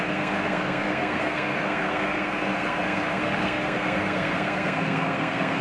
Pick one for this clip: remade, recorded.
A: remade